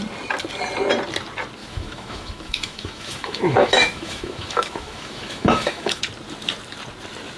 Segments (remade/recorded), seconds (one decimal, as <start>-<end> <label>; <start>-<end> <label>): 0.0-1.6 recorded; 1.6-6.0 remade; 6.0-7.4 recorded